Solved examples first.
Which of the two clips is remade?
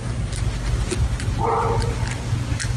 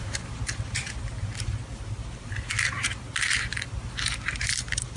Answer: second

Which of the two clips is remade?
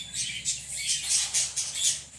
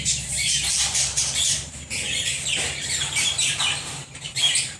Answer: second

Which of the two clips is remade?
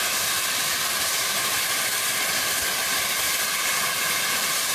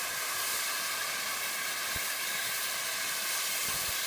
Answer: first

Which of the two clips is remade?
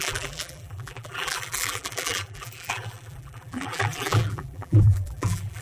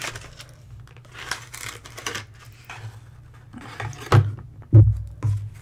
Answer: first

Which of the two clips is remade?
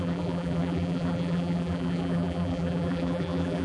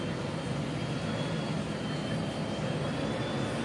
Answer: first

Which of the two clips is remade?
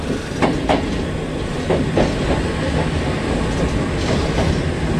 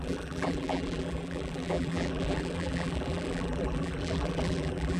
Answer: second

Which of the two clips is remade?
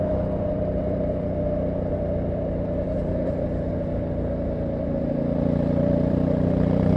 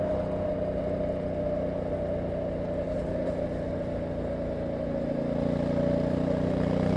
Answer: first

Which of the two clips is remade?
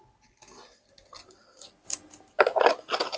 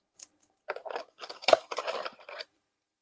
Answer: second